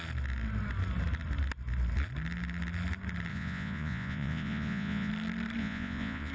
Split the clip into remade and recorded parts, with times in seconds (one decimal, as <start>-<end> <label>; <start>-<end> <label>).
0.0-3.3 recorded; 3.3-5.1 remade; 5.1-5.6 recorded; 5.6-6.3 remade